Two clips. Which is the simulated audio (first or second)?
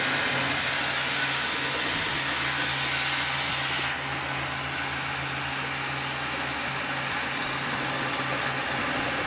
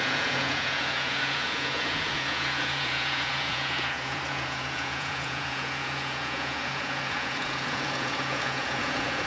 second